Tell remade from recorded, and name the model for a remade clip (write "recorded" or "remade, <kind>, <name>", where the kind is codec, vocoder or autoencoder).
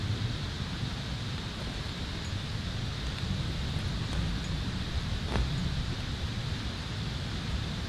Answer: recorded